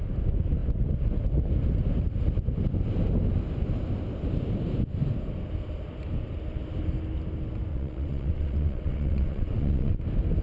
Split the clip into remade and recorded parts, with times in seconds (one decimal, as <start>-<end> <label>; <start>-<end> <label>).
0.0-7.7 recorded; 7.7-10.0 remade; 10.0-10.4 recorded